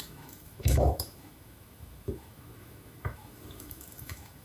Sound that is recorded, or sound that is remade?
remade